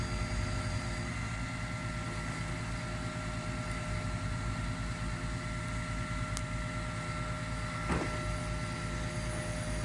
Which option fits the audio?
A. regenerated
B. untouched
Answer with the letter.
B